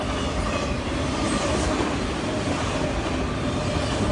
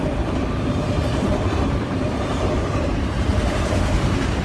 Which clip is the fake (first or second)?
second